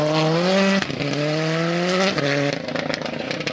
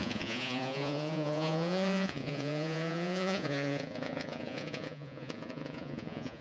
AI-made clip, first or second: second